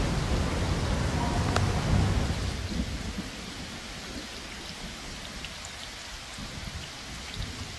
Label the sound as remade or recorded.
recorded